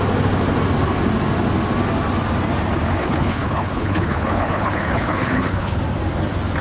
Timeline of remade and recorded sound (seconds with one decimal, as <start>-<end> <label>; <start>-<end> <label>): 0.0-3.0 recorded; 3.0-5.8 remade; 5.8-6.6 recorded